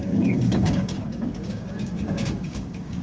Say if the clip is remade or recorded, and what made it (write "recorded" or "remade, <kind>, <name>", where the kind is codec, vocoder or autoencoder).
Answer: remade, codec, DAC